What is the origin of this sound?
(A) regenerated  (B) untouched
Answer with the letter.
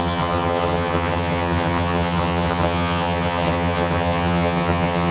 A